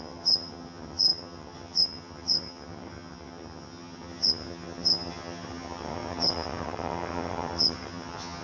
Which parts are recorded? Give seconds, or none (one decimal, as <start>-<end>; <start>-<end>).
none